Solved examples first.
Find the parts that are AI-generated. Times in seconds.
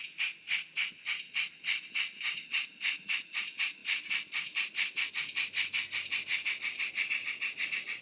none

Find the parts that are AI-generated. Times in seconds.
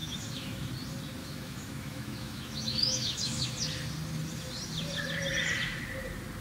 0.0-0.7; 1.2-3.5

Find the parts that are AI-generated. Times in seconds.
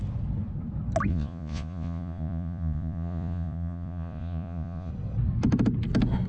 1.1-4.9